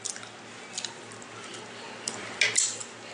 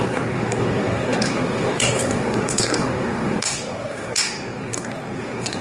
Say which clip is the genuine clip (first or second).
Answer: first